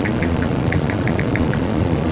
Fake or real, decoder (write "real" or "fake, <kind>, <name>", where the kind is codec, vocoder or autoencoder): fake, vocoder, Vocos